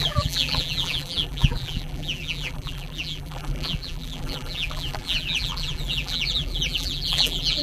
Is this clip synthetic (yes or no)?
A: yes